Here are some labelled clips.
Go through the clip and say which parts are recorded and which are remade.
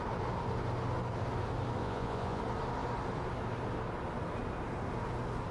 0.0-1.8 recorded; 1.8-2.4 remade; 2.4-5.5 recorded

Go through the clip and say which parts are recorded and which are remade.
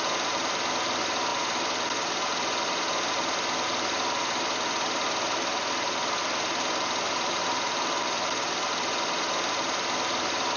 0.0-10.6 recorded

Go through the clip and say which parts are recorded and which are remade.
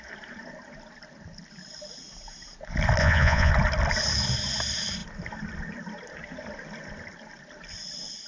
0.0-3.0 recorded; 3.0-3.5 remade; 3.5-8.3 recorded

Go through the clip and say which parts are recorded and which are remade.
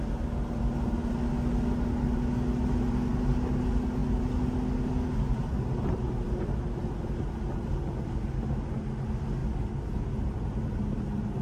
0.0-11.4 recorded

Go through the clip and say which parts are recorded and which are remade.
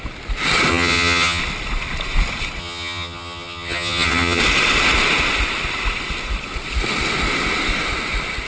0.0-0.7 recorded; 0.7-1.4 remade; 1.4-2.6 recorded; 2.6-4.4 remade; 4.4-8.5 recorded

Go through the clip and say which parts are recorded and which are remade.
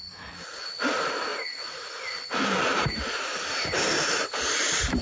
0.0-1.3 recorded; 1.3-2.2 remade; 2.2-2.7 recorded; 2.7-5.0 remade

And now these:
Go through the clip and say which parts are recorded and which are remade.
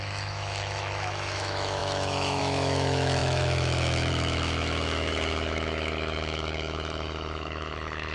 0.0-8.1 remade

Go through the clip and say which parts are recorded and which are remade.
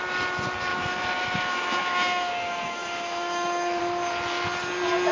0.0-0.7 recorded; 0.7-3.8 remade; 3.8-5.1 recorded